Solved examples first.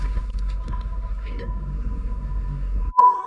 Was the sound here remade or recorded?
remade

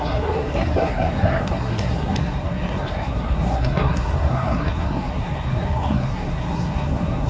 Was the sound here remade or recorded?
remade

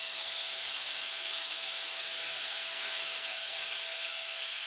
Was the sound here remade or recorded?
remade